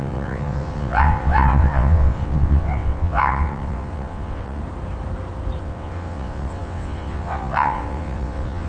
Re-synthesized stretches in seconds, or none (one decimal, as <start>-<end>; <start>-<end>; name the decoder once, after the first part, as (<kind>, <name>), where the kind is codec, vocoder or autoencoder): 0.0-4.6 (vocoder, WaveNeXt); 5.6-8.7